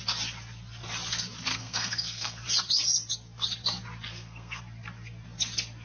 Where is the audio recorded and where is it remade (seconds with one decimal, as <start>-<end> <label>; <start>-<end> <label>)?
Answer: 0.0-1.5 recorded; 1.5-2.4 remade; 2.4-4.1 recorded; 4.1-4.6 remade; 4.6-5.8 recorded